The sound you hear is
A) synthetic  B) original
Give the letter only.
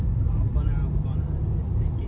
B